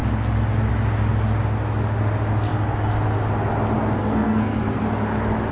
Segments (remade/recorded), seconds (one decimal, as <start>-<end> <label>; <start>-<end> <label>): 0.0-4.0 recorded; 4.0-4.8 remade; 4.8-5.5 recorded